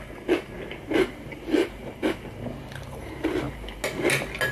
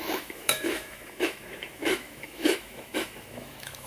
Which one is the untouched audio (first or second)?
first